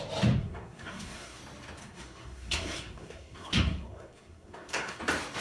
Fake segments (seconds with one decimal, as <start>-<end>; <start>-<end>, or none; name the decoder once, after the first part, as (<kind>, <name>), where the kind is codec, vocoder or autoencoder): 0.4-1.4 (codec, SNAC); 1.8-5.0